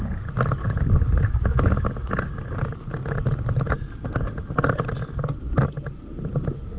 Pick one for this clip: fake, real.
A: real